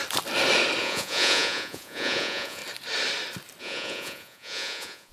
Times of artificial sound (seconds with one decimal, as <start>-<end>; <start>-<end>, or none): 0.8-2.6; 3.6-5.1